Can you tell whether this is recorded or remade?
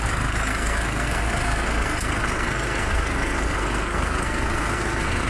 remade